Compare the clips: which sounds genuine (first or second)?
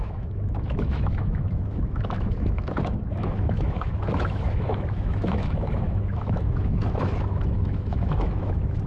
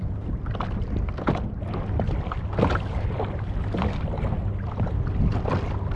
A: second